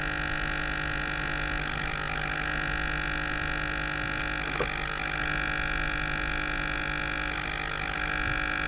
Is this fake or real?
real